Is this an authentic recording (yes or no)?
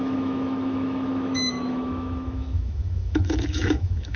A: no